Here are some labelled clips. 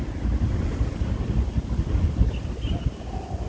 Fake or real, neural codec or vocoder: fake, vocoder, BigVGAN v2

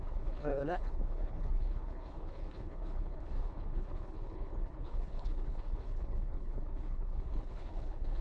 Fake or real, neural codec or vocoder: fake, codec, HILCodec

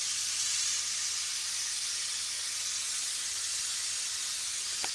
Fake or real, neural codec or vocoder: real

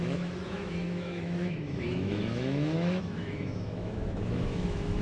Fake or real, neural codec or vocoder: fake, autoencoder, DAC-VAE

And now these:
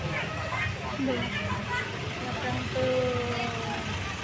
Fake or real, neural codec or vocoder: real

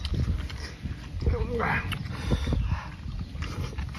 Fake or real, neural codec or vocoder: real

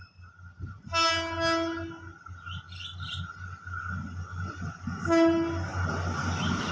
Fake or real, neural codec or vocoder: real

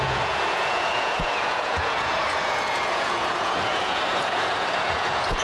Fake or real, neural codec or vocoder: fake, vocoder, Vocos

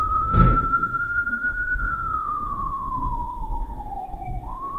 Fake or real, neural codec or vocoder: fake, autoencoder, DAC-VAE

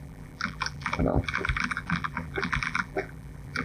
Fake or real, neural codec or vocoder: fake, vocoder, BigVGAN v2